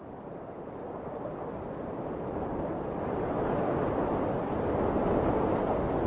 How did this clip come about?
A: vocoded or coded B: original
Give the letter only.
B